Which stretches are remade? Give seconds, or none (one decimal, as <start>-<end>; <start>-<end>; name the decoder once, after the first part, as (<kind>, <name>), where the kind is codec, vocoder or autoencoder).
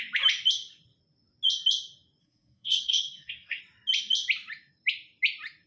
2.2-3.6 (codec, SNAC)